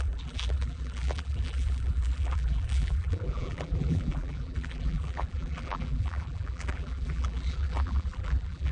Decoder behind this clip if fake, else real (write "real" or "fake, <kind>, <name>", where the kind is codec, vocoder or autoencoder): fake, vocoder, BigVGAN v2